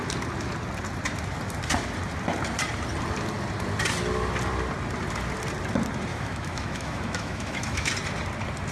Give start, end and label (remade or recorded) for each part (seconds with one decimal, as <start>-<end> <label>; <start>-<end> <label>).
0.0-6.1 recorded; 6.1-7.9 remade; 7.9-8.7 recorded